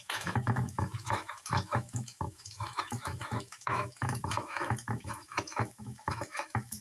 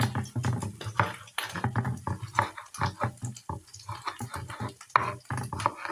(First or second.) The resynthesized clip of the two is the first